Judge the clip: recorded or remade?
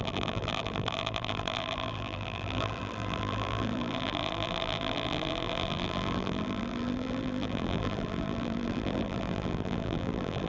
remade